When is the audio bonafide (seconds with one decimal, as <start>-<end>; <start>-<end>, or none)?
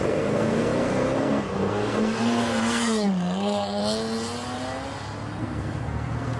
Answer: 3.8-5.4